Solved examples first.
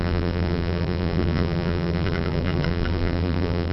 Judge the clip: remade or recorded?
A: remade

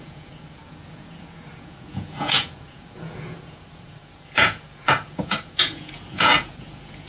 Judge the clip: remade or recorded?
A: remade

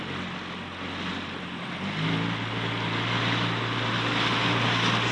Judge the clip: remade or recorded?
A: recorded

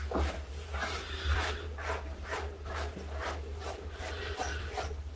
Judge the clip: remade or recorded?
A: remade